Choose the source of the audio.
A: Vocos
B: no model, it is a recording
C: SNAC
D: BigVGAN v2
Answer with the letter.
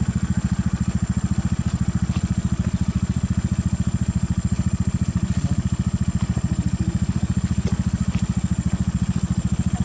B